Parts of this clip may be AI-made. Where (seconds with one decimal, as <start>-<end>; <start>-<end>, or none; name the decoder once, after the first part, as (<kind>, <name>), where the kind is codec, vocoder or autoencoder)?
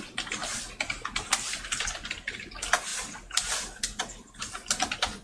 none